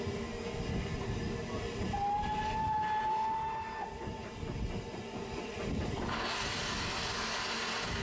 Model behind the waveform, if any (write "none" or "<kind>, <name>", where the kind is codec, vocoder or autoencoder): none